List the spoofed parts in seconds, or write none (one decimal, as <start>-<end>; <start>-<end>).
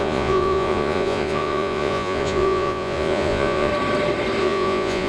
0.0-3.7; 4.4-5.1